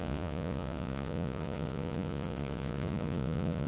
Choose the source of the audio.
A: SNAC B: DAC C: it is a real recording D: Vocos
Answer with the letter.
D